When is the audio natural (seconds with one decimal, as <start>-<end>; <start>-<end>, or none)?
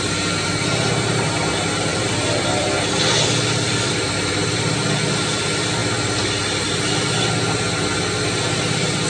0.0-1.9; 4.4-9.1